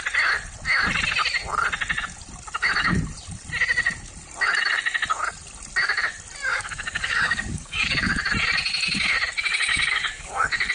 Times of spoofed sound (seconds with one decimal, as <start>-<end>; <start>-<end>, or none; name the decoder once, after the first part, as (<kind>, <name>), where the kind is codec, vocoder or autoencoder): 6.5-8.2 (codec, DAC); 9.7-10.7